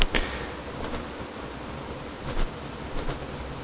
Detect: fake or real real